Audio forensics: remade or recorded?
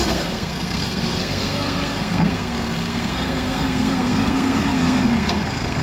remade